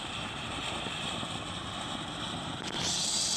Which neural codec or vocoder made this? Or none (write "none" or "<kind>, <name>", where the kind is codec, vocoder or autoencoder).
none